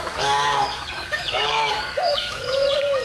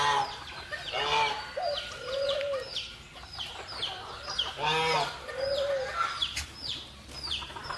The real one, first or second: second